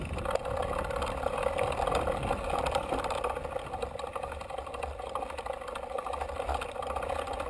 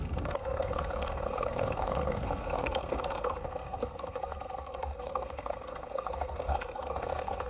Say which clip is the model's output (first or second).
second